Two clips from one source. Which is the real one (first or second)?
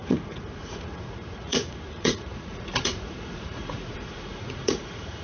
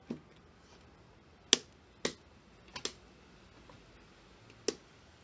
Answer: second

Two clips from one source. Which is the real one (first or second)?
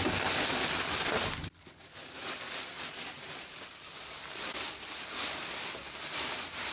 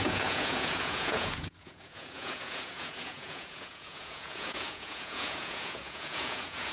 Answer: first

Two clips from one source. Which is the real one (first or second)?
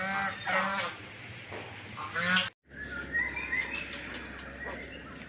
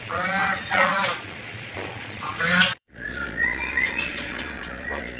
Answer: first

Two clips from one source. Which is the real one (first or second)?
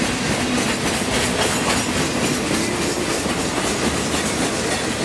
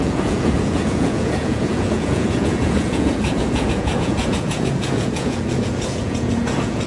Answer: first